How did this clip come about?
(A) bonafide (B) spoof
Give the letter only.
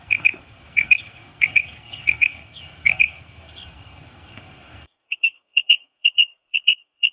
B